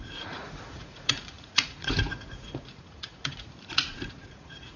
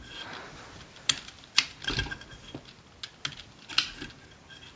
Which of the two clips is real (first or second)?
second